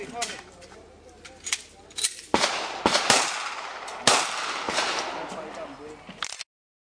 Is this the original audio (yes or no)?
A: yes